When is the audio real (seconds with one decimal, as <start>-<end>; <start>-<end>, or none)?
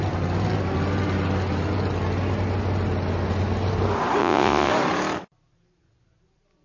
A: 0.0-4.2; 4.7-6.6